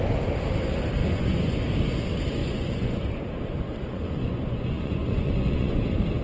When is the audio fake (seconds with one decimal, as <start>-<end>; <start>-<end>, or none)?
1.0-1.6; 2.4-3.0; 3.9-5.8